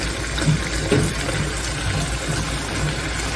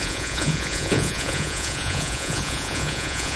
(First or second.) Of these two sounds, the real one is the first